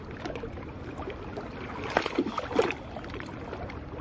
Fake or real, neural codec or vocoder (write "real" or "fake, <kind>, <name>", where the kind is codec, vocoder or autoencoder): real